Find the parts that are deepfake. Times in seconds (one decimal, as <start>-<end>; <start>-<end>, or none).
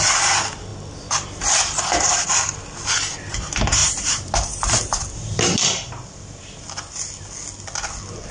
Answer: 3.8-5.9